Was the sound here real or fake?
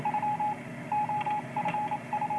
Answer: real